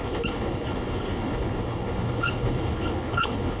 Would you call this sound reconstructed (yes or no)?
yes